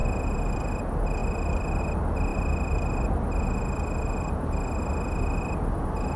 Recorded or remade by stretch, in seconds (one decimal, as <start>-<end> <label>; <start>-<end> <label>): 0.0-0.6 remade; 0.6-1.2 recorded; 1.2-1.8 remade; 1.8-6.2 recorded